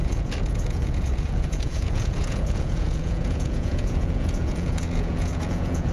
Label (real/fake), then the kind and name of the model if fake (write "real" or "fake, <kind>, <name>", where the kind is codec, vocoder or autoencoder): fake, vocoder, Vocos